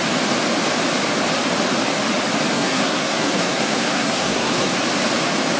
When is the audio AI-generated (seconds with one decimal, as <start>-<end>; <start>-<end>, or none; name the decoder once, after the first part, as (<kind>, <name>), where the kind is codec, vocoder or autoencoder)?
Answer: 2.5-4.8 (codec, SNAC)